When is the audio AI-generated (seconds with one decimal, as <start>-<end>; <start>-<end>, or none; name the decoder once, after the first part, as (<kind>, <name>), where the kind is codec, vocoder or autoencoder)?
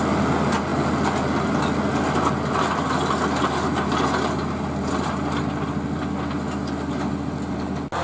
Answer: none